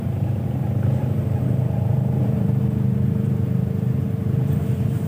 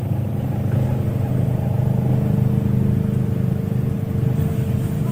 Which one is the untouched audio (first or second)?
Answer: second